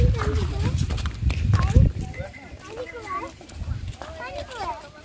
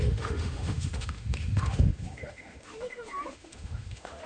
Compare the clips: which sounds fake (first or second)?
second